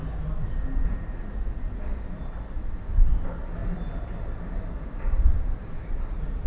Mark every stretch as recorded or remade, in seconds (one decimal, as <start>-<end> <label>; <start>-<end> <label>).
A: 0.0-6.5 recorded